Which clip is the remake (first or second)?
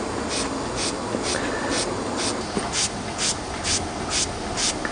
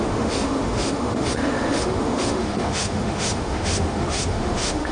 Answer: second